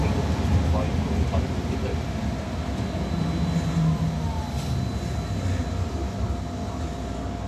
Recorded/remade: recorded